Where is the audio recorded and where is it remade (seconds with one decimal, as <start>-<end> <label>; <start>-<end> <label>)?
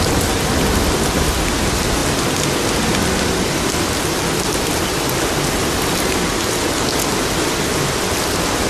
0.0-8.7 recorded